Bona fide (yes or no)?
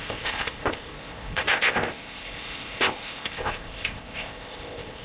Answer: no